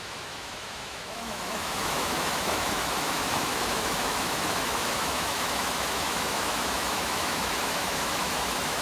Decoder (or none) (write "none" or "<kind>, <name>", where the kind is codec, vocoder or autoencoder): autoencoder, DAC-VAE